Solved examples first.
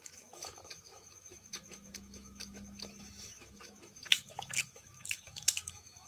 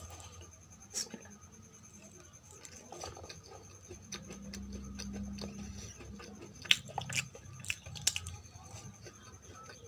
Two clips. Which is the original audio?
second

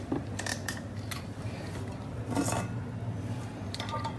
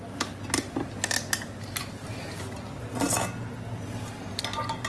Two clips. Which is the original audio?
second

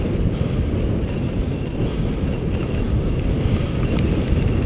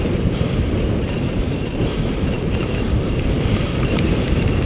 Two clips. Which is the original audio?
first